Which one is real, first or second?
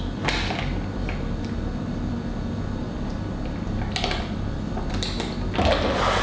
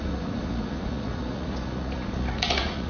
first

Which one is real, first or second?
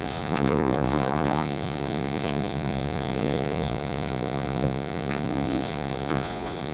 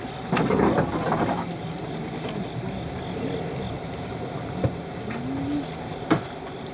second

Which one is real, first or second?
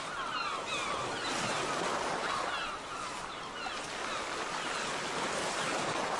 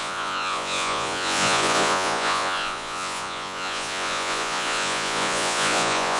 first